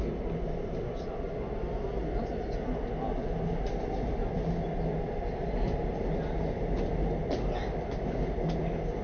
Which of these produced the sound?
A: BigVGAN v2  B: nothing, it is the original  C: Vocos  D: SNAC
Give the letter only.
B